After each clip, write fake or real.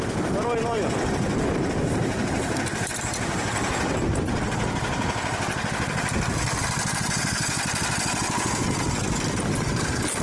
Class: real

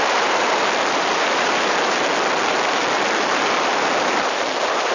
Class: fake